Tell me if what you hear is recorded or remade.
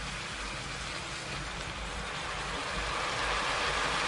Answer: recorded